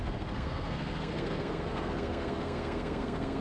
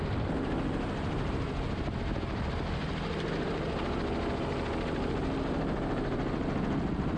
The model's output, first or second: first